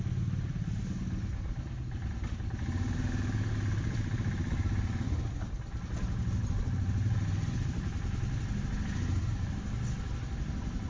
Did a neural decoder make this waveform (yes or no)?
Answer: no